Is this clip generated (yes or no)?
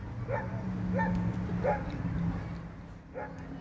no